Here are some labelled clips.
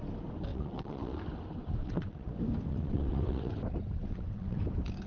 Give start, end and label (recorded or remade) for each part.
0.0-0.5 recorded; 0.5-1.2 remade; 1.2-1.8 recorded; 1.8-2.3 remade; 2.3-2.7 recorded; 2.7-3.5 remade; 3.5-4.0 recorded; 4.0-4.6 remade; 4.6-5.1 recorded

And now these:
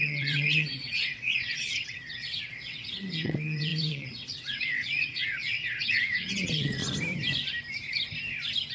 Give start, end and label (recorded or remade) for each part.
0.0-6.8 remade; 6.8-8.7 recorded

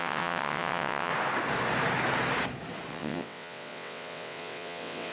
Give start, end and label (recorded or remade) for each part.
0.0-1.1 remade; 1.1-2.9 recorded; 2.9-5.1 remade

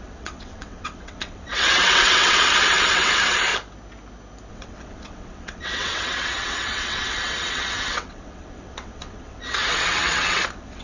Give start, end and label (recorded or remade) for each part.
0.0-3.5 remade; 3.5-4.5 recorded; 4.5-10.8 remade